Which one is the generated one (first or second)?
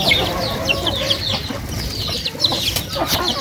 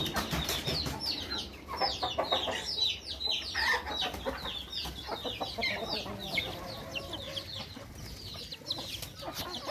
first